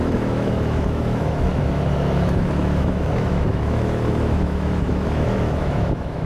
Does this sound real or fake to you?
fake